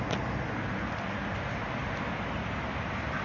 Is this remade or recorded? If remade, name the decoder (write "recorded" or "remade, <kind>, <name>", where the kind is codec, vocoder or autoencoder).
recorded